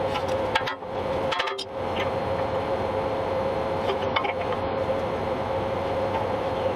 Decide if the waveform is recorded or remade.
recorded